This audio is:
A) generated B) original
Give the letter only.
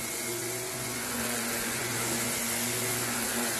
A